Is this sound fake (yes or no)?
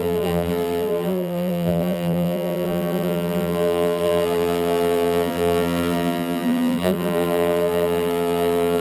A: yes